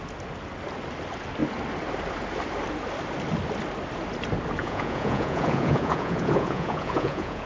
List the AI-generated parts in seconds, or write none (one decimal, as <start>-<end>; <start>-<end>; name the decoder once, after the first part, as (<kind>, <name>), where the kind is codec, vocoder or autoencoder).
4.6-7.5 (vocoder, Vocos)